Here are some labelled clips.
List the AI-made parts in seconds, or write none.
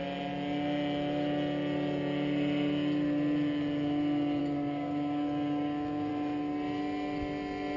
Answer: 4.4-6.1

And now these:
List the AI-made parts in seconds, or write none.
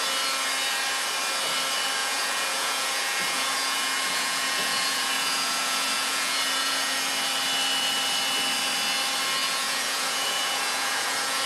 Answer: 2.0-7.1; 9.4-11.5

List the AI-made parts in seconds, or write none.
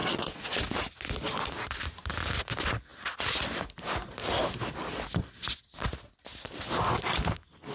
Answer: 0.0-0.6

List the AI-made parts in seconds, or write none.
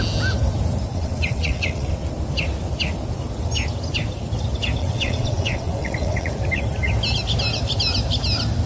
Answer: 0.9-1.9; 4.8-6.3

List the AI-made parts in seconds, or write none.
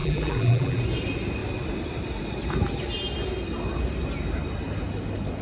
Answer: 0.0-0.8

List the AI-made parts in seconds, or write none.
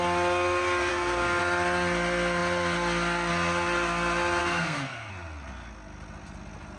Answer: 0.9-1.4; 4.4-5.1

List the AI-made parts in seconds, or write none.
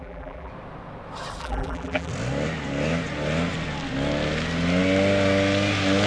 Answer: 0.0-0.5; 1.4-2.1